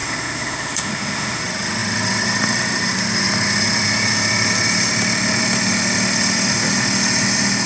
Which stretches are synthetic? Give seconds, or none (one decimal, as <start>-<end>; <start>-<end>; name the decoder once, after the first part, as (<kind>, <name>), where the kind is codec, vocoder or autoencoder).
0.0-1.4 (autoencoder, DAC-VAE)